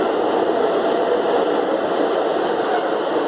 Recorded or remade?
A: recorded